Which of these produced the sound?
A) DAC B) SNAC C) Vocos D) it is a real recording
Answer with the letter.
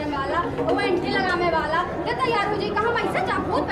D